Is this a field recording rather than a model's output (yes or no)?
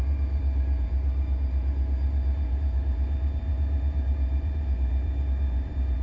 no